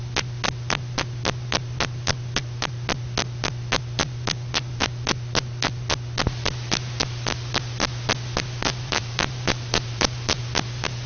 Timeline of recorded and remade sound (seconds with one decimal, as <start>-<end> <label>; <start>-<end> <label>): 0.0-8.7 recorded; 8.7-10.4 remade; 10.4-11.1 recorded